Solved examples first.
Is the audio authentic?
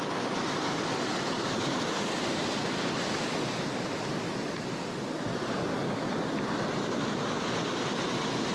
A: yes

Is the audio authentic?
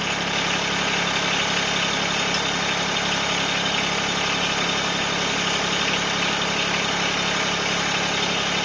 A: yes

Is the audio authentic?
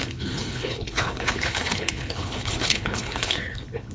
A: no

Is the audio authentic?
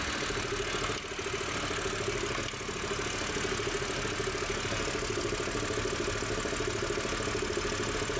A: yes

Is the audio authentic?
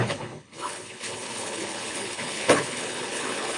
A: no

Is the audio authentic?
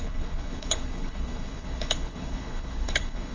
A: no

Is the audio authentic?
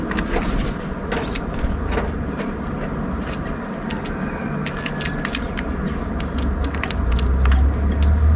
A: yes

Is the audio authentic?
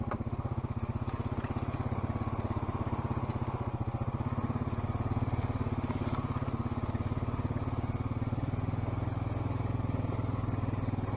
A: yes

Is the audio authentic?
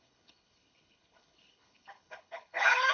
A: no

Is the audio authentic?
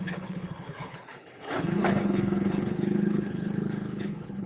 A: no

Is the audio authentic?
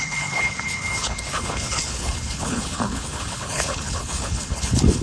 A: no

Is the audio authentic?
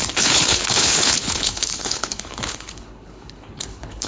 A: no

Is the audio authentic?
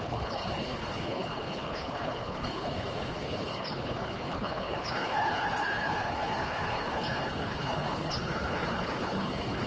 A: no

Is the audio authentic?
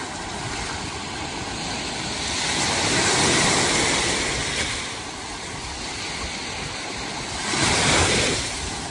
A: yes